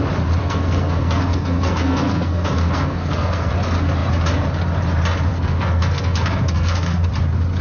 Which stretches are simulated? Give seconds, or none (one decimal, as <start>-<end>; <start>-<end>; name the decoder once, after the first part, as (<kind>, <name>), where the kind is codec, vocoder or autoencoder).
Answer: 0.4-3.5 (codec, SNAC); 5.3-7.1